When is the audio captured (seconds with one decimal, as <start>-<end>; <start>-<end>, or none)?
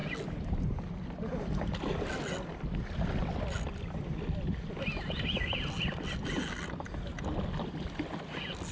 0.0-8.7